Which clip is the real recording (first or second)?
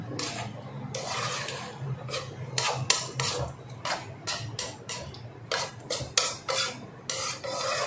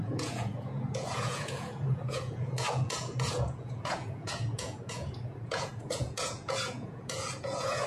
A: first